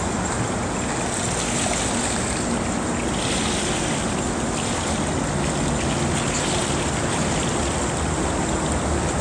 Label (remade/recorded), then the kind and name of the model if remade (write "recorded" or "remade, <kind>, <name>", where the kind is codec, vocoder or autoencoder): recorded